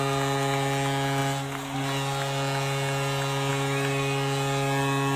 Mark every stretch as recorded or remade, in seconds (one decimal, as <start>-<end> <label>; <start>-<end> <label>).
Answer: 0.0-5.2 recorded